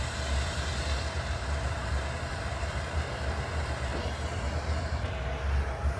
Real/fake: fake